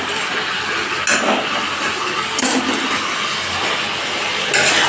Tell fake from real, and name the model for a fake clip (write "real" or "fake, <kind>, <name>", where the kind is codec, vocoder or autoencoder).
real